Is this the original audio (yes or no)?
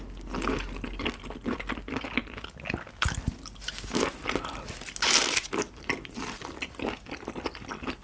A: yes